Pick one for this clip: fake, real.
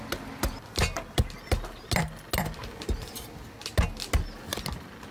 real